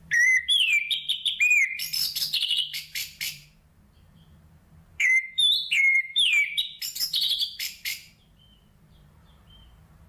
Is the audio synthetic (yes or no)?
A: yes